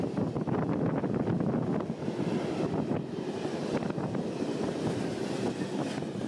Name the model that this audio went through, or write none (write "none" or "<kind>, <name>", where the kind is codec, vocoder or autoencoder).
none